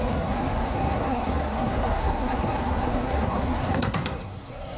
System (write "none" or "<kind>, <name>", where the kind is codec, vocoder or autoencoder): codec, SNAC